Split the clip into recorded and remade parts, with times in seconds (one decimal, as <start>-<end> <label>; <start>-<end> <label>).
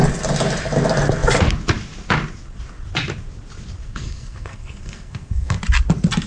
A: 0.0-3.8 recorded; 3.8-5.6 remade; 5.6-6.3 recorded